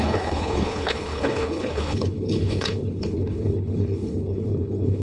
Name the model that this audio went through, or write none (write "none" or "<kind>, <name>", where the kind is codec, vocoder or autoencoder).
codec, HILCodec